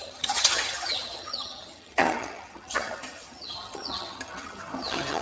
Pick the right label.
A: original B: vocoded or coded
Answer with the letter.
B